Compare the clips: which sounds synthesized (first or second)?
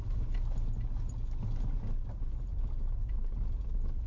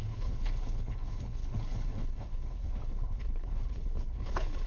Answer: second